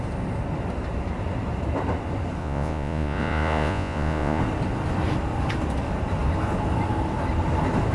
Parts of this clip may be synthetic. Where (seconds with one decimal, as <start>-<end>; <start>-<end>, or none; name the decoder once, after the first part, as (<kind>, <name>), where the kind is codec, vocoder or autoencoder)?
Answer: 2.4-4.4 (vocoder, Vocos)